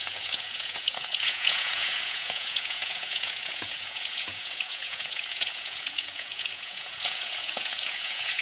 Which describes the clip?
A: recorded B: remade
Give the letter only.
B